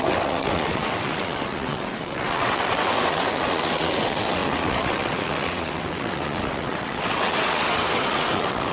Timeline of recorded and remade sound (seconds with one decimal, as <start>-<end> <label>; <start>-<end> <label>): 0.0-8.7 remade